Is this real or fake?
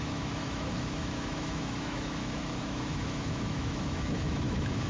fake